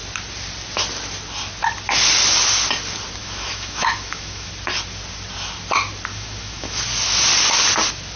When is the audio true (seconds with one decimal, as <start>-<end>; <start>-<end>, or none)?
0.0-3.2; 4.5-6.1; 6.8-8.2